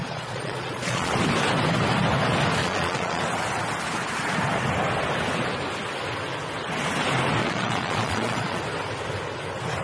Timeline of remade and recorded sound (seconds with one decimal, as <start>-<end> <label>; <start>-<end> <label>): 0.0-1.1 remade; 1.1-2.6 recorded; 2.6-3.2 remade; 3.2-7.4 recorded; 7.4-8.6 remade; 8.6-9.8 recorded